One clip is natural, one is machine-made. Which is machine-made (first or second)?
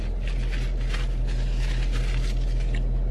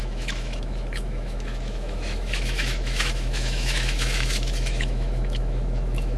second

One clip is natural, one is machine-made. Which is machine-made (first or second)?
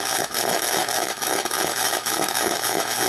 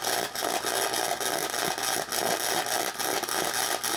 first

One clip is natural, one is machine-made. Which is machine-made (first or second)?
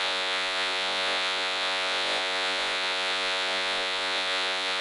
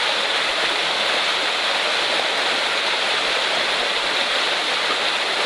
first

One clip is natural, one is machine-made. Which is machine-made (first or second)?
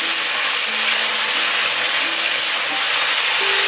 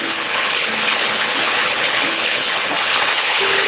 second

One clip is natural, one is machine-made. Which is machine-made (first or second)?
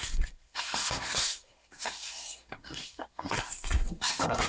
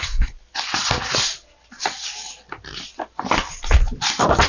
first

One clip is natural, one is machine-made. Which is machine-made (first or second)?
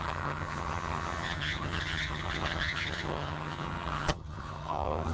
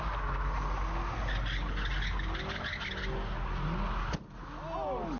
first